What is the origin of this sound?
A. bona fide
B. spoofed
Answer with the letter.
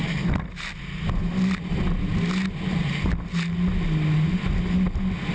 A